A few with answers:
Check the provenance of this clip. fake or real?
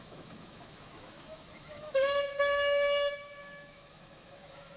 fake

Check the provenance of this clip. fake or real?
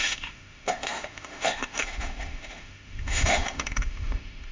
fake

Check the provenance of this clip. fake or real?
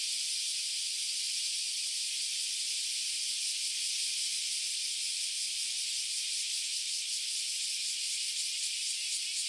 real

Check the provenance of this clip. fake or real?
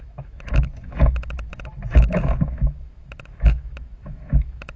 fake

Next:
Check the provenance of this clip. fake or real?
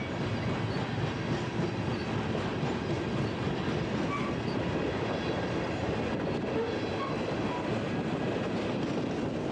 real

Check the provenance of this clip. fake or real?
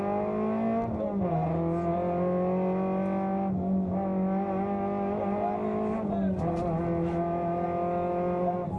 real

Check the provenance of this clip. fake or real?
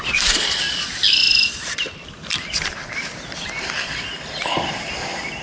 real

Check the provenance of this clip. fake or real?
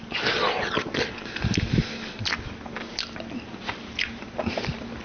real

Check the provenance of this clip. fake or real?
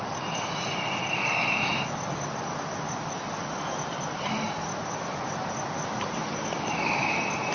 real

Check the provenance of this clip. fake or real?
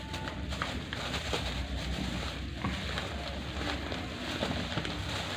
real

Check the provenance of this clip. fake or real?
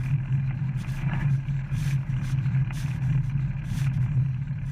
real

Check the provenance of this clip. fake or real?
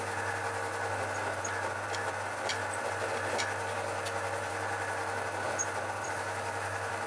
real